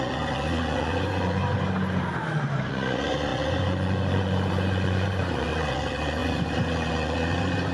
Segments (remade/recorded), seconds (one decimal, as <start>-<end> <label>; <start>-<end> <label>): 0.0-1.4 remade; 1.4-2.7 recorded; 2.7-7.7 remade

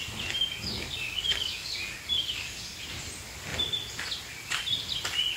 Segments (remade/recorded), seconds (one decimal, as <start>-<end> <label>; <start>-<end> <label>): 0.0-0.4 recorded; 0.4-2.8 remade; 2.8-5.4 recorded

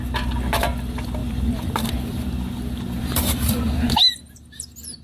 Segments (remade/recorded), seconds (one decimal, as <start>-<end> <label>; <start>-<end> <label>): 0.0-1.2 recorded; 1.2-4.2 remade; 4.2-5.0 recorded

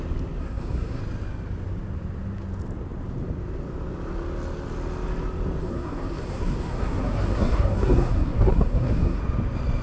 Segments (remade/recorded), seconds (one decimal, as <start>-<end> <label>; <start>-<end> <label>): 0.0-0.4 recorded; 0.4-1.0 remade; 1.0-5.6 recorded; 5.6-9.2 remade; 9.2-9.8 recorded

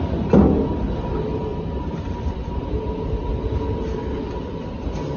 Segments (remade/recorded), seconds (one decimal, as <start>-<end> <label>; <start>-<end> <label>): 0.0-1.5 recorded; 1.5-2.6 remade; 2.6-5.2 recorded

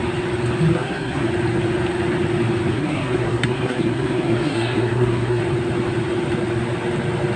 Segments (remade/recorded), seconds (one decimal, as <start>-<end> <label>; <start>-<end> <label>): 0.0-0.7 recorded; 0.7-1.3 remade; 1.3-2.7 recorded; 2.7-5.4 remade; 5.4-7.4 recorded

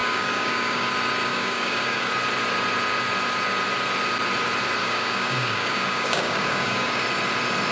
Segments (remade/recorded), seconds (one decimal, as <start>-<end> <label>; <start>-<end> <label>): 0.0-0.9 remade; 0.9-1.3 recorded; 1.3-2.1 remade; 2.1-4.8 recorded; 4.8-7.0 remade; 7.0-7.7 recorded